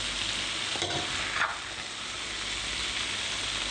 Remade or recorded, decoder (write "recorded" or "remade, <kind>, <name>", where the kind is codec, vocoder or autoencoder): recorded